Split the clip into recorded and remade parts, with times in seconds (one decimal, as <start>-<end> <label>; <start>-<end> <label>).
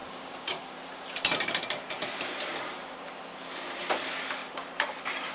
0.0-3.2 remade; 3.2-4.4 recorded; 4.4-5.3 remade